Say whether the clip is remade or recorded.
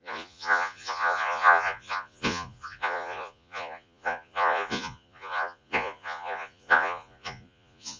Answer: remade